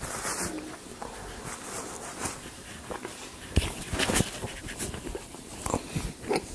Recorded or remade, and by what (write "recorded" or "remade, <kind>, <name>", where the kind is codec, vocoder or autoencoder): recorded